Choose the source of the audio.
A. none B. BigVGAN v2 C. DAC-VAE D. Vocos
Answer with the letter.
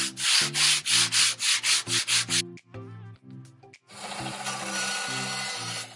A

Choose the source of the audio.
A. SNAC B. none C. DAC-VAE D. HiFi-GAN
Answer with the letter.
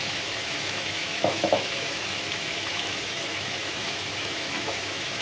C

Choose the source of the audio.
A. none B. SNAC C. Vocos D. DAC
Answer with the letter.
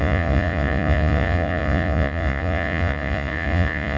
C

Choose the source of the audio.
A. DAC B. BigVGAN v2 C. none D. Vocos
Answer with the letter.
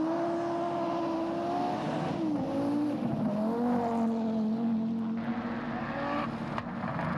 C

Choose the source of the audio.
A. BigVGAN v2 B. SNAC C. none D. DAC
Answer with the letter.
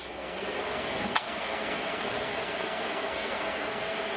B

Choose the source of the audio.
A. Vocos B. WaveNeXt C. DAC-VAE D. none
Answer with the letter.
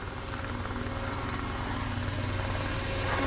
D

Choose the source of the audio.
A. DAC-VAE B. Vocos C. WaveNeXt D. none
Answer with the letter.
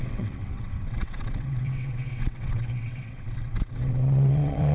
C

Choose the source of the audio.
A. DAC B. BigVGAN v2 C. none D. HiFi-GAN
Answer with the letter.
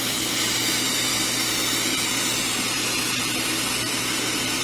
C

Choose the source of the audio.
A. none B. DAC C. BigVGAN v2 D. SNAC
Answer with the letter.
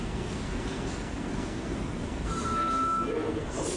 D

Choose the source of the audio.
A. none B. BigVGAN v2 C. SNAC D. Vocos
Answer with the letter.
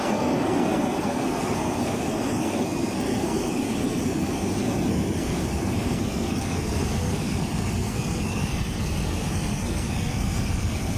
C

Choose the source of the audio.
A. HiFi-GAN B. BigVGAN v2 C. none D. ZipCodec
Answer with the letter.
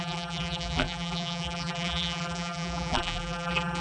B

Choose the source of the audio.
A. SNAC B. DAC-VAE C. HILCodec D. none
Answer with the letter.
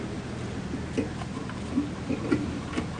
D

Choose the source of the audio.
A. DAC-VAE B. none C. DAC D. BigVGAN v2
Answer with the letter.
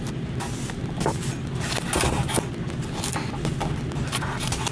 B